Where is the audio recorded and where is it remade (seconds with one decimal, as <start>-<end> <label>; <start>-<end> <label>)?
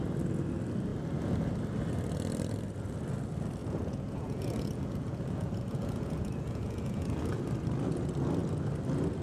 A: 0.0-3.6 recorded; 3.6-7.4 remade; 7.4-9.2 recorded